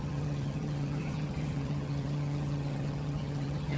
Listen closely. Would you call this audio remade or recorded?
remade